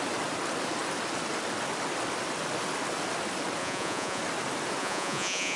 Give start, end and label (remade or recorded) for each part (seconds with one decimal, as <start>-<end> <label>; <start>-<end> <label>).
0.0-3.6 recorded; 3.6-4.2 remade; 4.2-4.8 recorded; 4.8-5.6 remade